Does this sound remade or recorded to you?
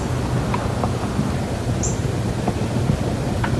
recorded